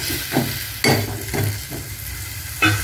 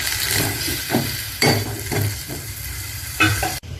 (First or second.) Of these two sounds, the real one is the first